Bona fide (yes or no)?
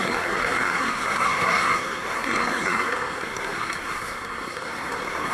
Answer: no